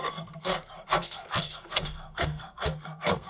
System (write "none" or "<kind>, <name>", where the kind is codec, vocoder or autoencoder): codec, SNAC